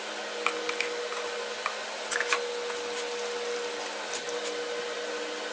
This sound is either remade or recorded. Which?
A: recorded